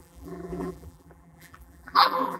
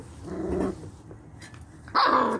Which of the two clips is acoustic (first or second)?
second